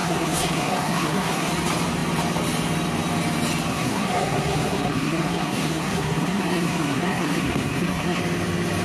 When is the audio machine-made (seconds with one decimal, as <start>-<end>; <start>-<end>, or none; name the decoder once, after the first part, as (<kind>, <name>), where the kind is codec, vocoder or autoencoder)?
0.0-1.5 (codec, SNAC); 3.7-8.2